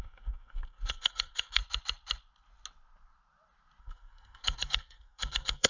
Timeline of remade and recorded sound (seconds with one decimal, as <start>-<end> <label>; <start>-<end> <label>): 0.0-1.6 remade; 1.6-3.8 recorded; 3.8-5.7 remade